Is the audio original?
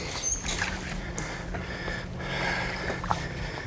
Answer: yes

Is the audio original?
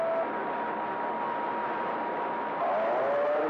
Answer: yes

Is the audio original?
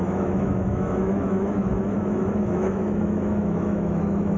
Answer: no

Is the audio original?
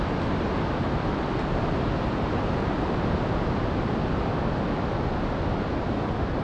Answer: yes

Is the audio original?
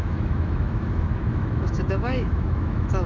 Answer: no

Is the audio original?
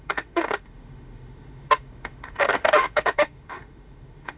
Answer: no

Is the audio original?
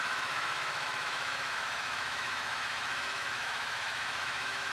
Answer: no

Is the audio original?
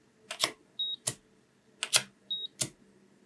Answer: yes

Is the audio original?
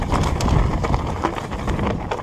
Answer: yes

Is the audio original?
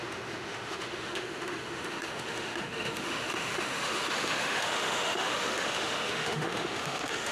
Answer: no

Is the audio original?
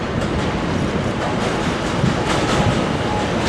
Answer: yes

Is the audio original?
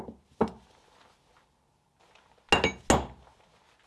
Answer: yes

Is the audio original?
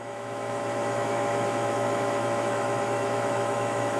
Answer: no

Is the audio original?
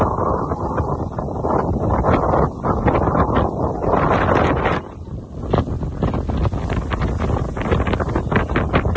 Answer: yes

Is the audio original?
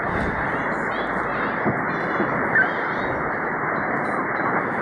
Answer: yes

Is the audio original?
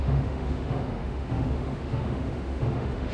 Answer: no